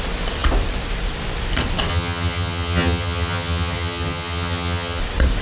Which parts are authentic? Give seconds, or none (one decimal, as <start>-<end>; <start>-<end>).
0.0-1.9; 5.0-5.4